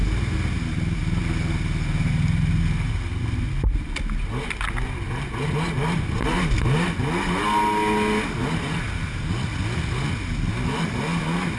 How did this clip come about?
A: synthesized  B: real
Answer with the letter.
B